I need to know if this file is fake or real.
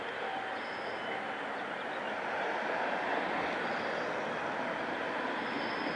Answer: real